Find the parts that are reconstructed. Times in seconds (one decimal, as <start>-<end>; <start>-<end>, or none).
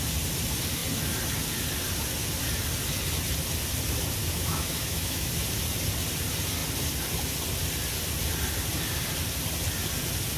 4.2-5.3